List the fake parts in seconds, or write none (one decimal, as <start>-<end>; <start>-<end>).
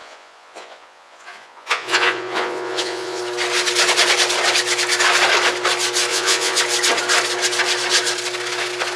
0.0-3.2; 6.1-6.6